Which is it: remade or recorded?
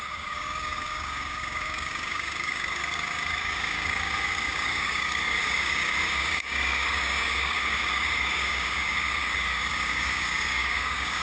remade